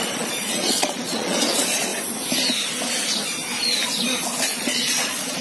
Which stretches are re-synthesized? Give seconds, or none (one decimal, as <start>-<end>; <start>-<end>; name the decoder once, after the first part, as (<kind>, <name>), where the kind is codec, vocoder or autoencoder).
0.0-1.9 (vocoder, Vocos); 4.6-5.4